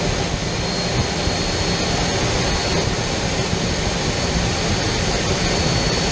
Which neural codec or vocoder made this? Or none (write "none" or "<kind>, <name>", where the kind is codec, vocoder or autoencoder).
none